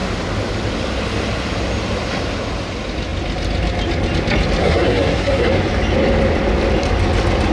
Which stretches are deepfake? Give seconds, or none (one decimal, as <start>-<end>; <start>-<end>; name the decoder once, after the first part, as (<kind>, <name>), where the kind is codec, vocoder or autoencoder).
4.6-5.5 (codec, SNAC)